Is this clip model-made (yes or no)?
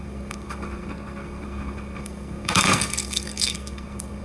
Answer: yes